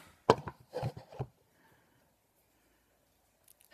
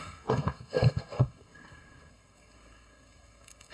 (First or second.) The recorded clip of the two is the first